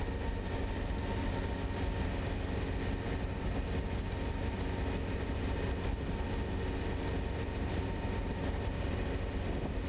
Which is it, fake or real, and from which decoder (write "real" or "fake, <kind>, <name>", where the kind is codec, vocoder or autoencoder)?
real